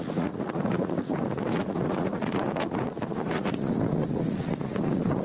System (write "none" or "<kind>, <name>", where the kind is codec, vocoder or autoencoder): vocoder, Vocos